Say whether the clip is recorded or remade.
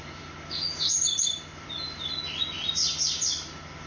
remade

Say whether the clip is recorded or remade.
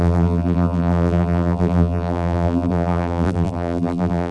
remade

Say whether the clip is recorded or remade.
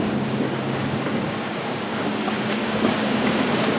remade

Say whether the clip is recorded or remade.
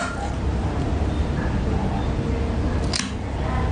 recorded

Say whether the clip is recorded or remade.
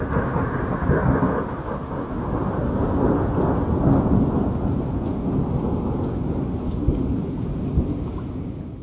recorded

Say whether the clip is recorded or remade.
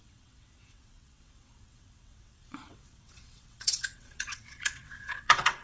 remade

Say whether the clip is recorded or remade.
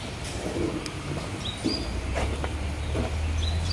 recorded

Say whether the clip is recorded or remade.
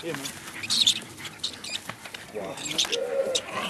recorded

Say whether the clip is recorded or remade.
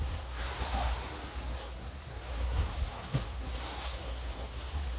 remade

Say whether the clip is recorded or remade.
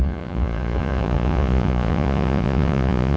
remade